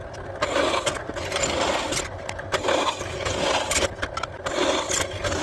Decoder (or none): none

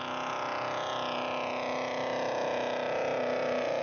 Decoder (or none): none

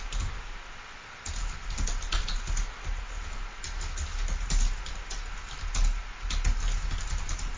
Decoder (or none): none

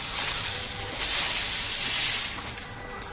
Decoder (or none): none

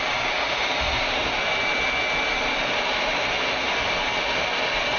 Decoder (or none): none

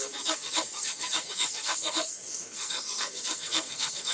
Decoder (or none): codec, SNAC